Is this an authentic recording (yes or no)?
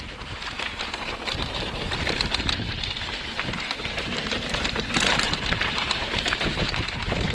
no